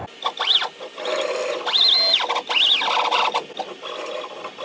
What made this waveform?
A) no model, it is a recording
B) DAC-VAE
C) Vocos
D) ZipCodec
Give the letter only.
A